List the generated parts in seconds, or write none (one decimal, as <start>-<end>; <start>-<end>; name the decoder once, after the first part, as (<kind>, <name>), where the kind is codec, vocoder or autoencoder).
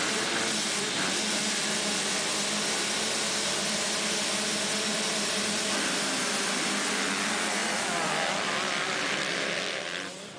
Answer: none